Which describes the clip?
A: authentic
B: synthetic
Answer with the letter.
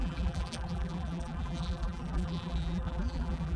B